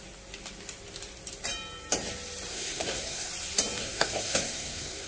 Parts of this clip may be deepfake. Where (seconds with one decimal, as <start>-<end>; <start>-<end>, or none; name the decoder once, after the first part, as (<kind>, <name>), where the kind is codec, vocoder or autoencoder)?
2.5-3.3 (codec, SNAC); 3.8-5.1